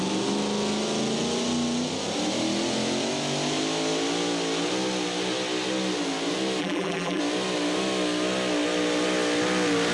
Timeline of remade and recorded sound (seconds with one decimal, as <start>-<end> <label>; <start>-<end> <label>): 0.0-6.6 recorded; 6.6-7.2 remade; 7.2-9.9 recorded